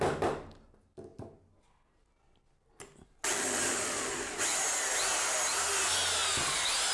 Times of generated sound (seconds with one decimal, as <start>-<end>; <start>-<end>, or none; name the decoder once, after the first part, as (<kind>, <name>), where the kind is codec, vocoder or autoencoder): none